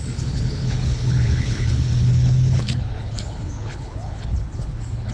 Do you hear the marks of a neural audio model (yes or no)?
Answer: yes